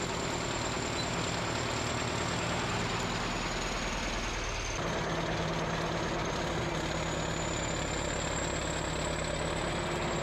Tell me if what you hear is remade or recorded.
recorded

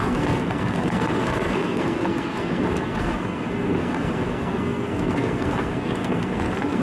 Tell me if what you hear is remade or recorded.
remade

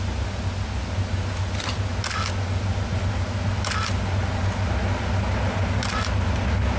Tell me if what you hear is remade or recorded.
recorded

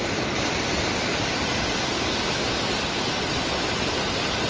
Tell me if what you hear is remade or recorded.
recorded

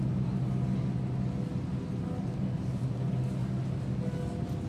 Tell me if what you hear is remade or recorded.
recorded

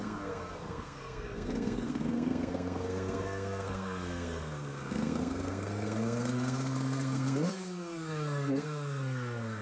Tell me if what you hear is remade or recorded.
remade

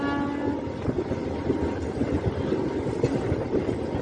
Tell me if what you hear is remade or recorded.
recorded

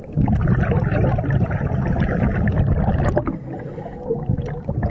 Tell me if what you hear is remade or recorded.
recorded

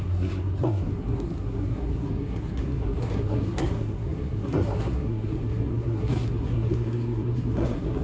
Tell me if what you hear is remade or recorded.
remade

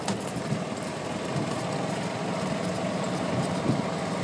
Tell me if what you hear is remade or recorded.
recorded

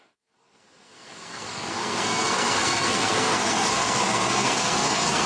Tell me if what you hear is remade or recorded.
remade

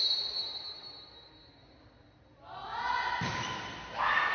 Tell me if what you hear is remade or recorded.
recorded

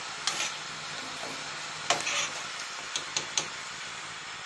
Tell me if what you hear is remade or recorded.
recorded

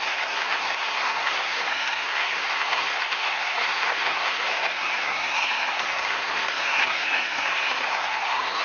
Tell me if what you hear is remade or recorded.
remade